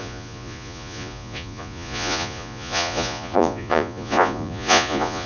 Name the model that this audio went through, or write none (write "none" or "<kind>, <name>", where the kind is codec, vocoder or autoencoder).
vocoder, Vocos